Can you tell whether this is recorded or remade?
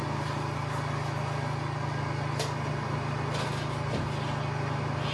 recorded